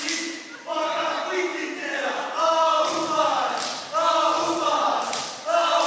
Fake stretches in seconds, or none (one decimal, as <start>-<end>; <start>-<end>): none